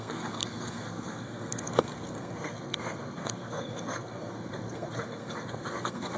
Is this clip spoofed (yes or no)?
yes